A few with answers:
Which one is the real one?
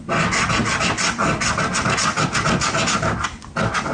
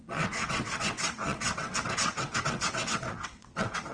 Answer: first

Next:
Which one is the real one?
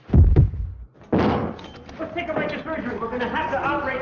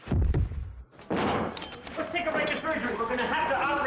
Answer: first